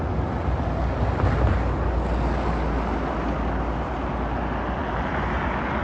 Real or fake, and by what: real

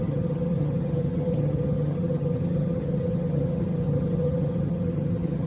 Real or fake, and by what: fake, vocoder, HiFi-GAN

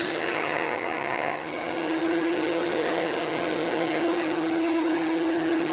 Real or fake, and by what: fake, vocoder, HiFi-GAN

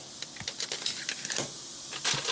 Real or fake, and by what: real